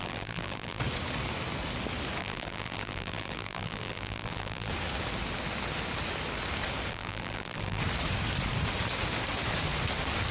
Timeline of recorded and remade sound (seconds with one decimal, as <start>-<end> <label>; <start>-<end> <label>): 0.0-0.8 remade; 0.8-2.2 recorded; 2.2-4.7 remade; 4.7-6.9 recorded; 6.9-7.8 remade; 7.8-10.3 recorded